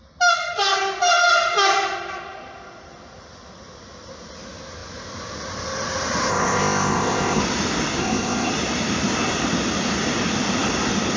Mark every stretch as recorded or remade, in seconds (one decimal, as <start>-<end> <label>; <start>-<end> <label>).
0.0-6.3 recorded; 6.3-7.4 remade; 7.4-8.0 recorded; 8.0-8.5 remade; 8.5-11.2 recorded